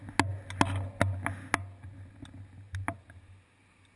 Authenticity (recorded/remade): recorded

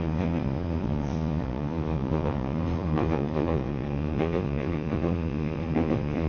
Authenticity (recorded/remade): remade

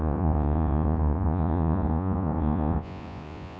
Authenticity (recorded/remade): remade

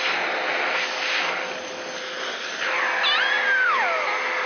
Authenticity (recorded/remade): recorded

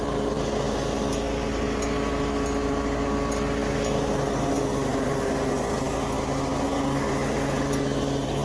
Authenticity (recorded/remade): recorded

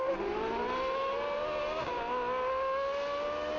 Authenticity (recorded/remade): recorded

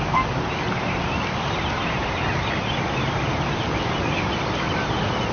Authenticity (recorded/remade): recorded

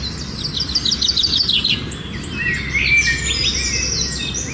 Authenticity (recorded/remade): recorded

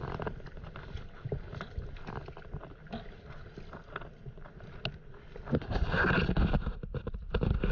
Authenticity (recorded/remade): recorded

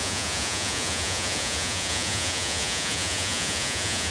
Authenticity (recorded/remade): remade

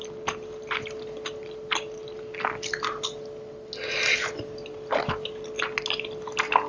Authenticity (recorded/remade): recorded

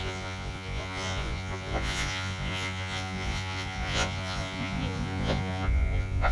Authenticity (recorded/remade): remade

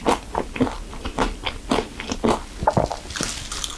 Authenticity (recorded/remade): recorded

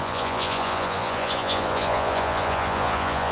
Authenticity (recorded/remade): remade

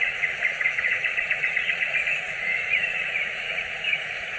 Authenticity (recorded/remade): remade